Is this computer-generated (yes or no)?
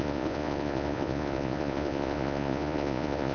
yes